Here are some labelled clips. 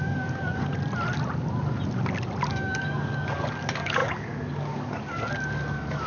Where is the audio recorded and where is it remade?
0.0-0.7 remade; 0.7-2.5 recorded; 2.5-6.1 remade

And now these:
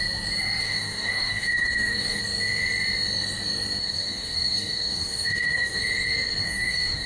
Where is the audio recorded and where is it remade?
0.0-0.6 recorded; 0.6-2.2 remade; 2.2-3.8 recorded; 3.8-5.8 remade; 5.8-6.4 recorded; 6.4-7.1 remade

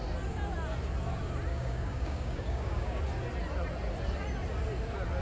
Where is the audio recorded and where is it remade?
0.0-1.5 recorded; 1.5-3.0 remade; 3.0-5.2 recorded

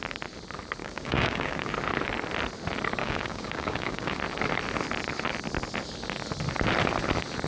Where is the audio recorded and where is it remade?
0.0-0.8 recorded; 0.8-1.7 remade; 1.7-3.0 recorded; 3.0-4.2 remade; 4.2-7.5 recorded

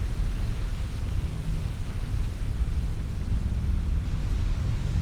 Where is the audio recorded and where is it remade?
0.0-0.7 recorded; 0.7-2.1 remade; 2.1-4.2 recorded; 4.2-5.0 remade